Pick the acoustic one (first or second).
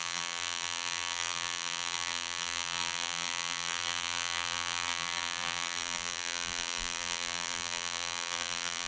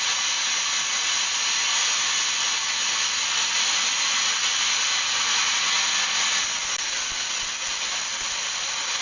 second